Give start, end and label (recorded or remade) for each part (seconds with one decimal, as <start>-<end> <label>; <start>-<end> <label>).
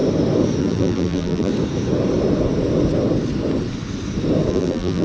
0.0-0.6 recorded; 0.6-1.5 remade; 1.5-4.5 recorded; 4.5-5.0 remade